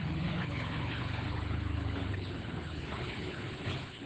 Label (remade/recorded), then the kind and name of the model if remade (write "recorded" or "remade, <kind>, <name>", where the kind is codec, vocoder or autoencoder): remade, codec, HILCodec